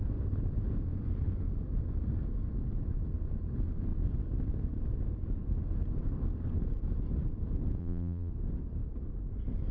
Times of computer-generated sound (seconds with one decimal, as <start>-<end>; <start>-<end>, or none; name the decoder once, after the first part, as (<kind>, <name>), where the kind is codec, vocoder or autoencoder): 7.8-8.3 (vocoder, BigVGAN v2)